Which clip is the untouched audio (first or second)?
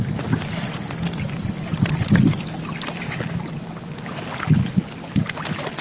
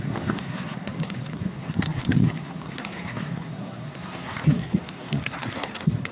first